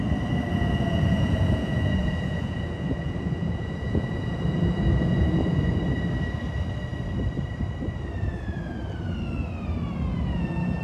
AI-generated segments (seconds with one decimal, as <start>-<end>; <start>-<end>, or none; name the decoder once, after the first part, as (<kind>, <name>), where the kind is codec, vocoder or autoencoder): 0.5-5.8 (vocoder, Vocos); 10.1-10.8